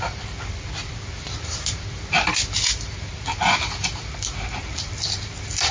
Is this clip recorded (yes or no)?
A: yes